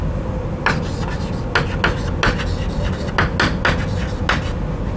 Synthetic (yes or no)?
no